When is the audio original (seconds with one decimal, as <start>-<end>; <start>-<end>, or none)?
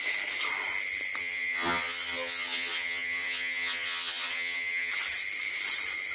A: 0.0-1.2; 4.9-6.1